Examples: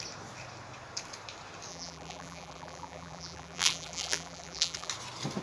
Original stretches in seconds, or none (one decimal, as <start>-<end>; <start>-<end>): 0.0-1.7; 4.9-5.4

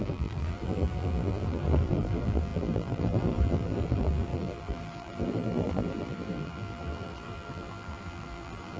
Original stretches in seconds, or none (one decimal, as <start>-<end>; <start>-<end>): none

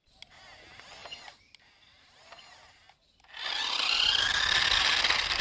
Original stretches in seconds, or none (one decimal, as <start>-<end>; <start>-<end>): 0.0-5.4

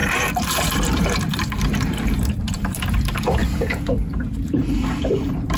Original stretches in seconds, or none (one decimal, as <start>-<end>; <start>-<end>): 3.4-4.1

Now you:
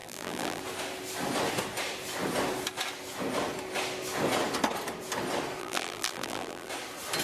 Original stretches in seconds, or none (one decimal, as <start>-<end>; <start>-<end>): 0.6-5.6; 6.7-7.2

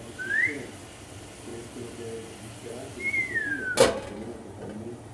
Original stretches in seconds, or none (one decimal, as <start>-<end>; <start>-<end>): 0.0-5.1

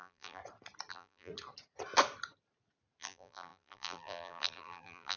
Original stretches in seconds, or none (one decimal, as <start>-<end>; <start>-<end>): 0.4-0.9; 1.3-3.0